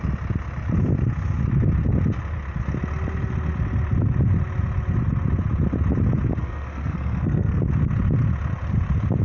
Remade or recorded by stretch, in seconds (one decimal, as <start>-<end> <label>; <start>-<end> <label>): 0.0-6.4 recorded; 6.4-7.6 remade; 7.6-9.2 recorded